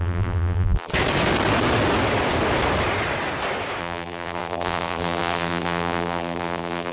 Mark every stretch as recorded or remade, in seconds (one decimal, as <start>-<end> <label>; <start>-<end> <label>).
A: 0.0-0.9 remade; 0.9-3.8 recorded; 3.8-6.9 remade

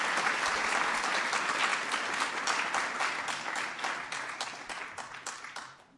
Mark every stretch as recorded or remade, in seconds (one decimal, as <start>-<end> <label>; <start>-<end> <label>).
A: 0.0-6.0 recorded

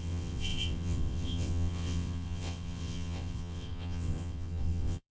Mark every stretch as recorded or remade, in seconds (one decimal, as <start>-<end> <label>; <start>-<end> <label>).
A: 0.0-5.1 remade

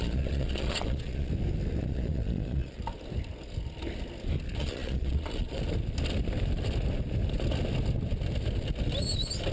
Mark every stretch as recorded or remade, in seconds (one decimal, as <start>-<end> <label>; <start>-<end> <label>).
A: 0.0-1.3 remade; 1.3-1.8 recorded; 1.8-2.8 remade; 2.8-4.6 recorded; 4.6-5.6 remade; 5.6-9.5 recorded

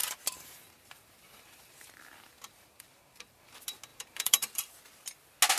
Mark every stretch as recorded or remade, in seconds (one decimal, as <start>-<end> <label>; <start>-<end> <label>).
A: 0.0-3.4 remade; 3.4-3.9 recorded; 3.9-4.7 remade; 4.7-5.6 recorded

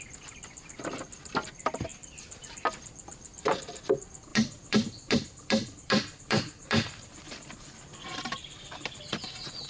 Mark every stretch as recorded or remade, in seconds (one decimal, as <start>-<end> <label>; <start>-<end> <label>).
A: 0.0-1.9 recorded; 1.9-3.6 remade; 3.6-4.3 recorded; 4.3-7.5 remade; 7.5-9.7 recorded

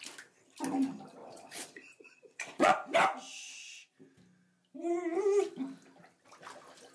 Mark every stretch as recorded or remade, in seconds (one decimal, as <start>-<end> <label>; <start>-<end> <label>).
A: 0.0-1.2 recorded; 1.2-2.7 remade; 2.7-6.9 recorded

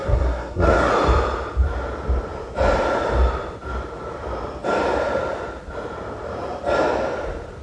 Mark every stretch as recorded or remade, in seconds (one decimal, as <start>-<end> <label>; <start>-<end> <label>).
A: 0.0-0.9 remade; 0.9-7.6 recorded